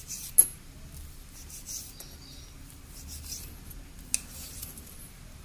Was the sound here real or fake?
real